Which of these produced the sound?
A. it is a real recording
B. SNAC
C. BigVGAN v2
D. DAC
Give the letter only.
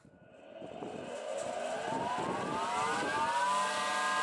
A